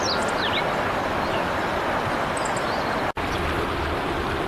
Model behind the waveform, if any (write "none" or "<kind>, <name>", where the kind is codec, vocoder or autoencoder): none